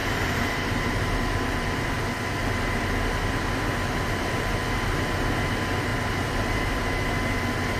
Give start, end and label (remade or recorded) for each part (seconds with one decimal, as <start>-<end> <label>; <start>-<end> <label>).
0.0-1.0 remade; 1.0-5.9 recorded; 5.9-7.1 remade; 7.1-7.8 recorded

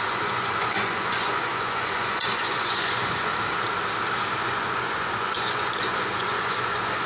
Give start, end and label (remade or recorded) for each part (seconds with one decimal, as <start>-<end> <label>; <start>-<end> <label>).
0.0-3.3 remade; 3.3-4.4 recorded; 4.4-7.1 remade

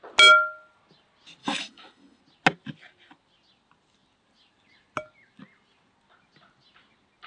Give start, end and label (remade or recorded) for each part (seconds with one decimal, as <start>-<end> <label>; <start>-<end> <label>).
0.0-1.4 recorded; 1.4-2.2 remade; 2.2-7.3 recorded

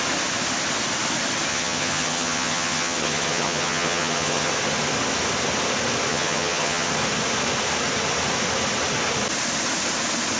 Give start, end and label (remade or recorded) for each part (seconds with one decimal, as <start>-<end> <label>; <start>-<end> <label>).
0.0-1.5 recorded; 1.5-4.5 remade; 4.5-6.1 recorded; 6.1-6.9 remade; 6.9-10.4 recorded

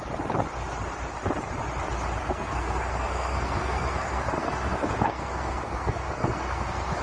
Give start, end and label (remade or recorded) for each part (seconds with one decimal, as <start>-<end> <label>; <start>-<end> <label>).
0.0-2.2 recorded; 2.2-7.0 remade